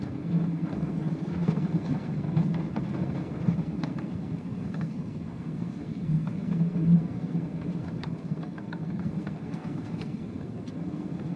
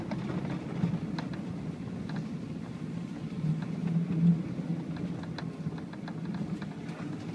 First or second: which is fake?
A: first